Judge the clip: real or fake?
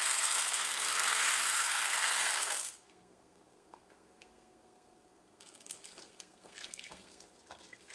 fake